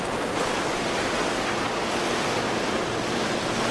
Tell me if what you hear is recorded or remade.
recorded